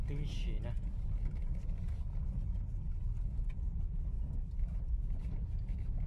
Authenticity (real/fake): real